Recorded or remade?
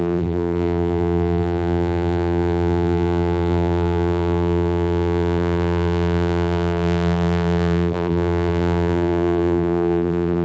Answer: remade